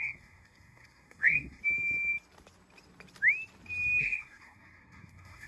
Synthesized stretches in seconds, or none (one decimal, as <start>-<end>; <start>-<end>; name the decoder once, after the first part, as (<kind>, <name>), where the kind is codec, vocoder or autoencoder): 0.0-1.6 (codec, SNAC); 4.0-5.5